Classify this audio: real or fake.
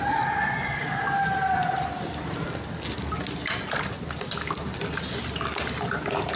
real